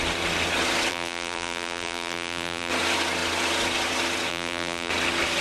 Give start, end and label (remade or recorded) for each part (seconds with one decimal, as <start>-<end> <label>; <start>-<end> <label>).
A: 0.0-0.9 recorded; 0.9-2.7 remade; 2.7-4.3 recorded; 4.3-4.9 remade; 4.9-5.4 recorded